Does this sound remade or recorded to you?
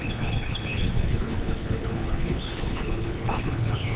remade